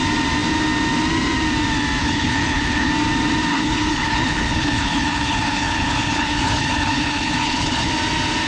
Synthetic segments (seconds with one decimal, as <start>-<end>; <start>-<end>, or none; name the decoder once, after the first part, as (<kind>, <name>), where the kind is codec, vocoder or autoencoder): 2.0-2.9 (codec, HILCodec); 3.5-7.9